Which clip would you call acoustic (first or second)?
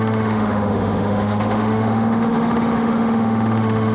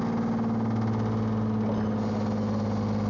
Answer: second